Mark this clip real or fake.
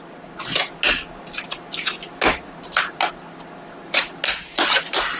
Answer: real